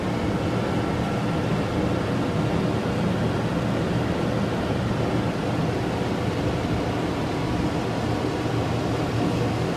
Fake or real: real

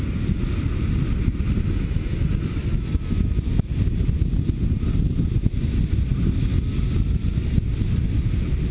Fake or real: real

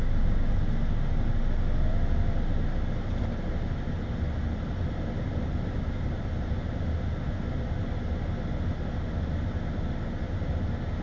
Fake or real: real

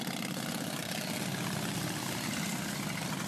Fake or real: real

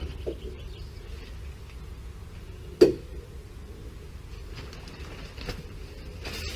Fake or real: real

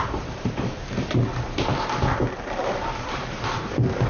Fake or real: fake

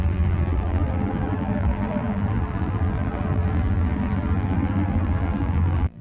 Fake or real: fake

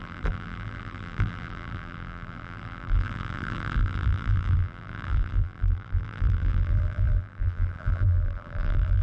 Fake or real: fake